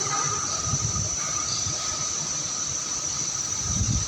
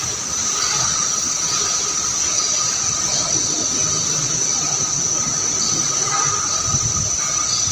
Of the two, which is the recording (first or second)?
second